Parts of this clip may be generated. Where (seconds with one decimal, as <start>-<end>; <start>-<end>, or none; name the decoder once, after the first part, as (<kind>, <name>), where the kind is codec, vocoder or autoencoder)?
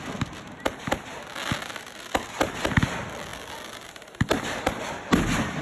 none